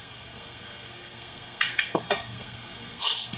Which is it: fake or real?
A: fake